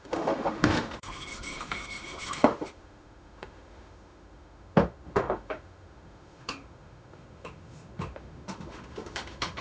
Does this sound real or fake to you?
fake